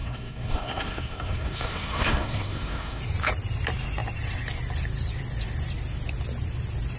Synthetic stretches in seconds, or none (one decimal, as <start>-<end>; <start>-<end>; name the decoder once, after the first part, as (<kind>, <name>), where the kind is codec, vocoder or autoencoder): 0.0-3.0 (codec, SNAC)